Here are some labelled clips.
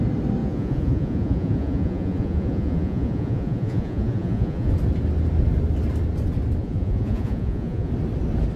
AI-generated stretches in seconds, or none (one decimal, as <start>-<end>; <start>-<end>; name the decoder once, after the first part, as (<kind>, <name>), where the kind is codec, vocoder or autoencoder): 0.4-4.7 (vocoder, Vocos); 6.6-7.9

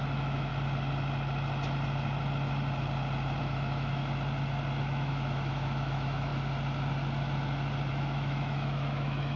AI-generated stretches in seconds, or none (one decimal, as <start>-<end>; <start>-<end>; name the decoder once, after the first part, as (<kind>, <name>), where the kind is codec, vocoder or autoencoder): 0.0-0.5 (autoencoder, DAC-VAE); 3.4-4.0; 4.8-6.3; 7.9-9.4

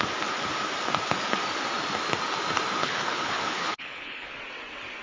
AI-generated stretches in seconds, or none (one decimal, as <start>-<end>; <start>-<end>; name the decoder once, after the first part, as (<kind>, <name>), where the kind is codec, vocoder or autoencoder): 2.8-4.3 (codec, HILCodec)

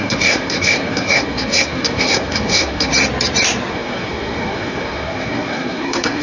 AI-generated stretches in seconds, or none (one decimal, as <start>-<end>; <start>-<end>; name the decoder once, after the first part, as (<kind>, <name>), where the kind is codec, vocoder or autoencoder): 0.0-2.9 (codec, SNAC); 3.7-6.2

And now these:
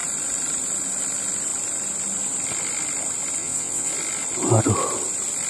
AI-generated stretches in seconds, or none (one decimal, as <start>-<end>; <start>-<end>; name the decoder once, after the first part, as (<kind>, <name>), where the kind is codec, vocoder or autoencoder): 3.4-3.9 (vocoder, WaveNeXt)